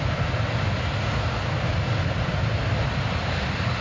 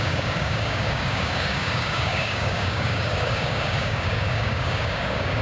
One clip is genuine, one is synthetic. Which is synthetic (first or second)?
second